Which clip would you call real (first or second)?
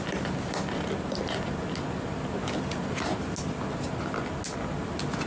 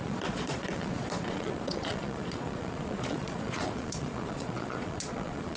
first